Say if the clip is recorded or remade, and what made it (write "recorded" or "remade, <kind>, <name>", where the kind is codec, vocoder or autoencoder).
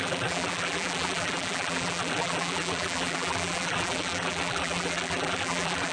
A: remade, vocoder, BigVGAN v2